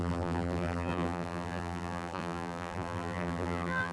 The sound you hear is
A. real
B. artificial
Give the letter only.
B